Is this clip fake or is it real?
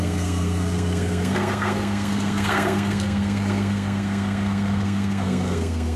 fake